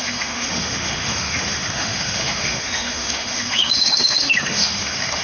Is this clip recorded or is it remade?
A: remade